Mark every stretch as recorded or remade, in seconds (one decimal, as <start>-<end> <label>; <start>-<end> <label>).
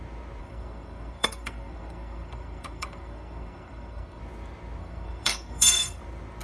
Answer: 0.0-0.4 recorded; 0.4-4.2 remade; 4.2-4.8 recorded; 4.8-6.0 remade; 6.0-6.4 recorded